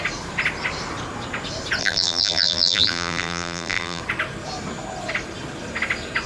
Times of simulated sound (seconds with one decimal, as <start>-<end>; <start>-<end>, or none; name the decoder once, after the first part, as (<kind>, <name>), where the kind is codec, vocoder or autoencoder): 1.8-4.0 (vocoder, BigVGAN v2)